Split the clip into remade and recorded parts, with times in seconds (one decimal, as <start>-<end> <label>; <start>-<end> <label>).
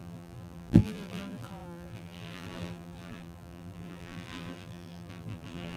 0.0-5.8 remade